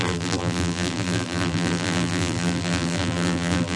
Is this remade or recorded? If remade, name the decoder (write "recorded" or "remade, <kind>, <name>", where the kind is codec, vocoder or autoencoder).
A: remade, vocoder, BigVGAN v2